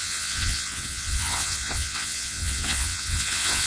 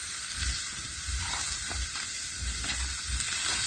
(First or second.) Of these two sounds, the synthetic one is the first